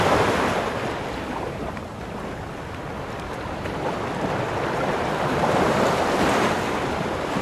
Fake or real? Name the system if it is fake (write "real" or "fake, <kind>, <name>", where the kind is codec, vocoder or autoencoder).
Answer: fake, vocoder, BigVGAN v2